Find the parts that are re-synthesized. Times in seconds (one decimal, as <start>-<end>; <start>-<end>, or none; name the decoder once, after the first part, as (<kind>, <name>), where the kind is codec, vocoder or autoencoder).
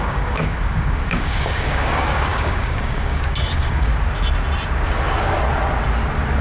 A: 0.0-3.9 (codec, DAC)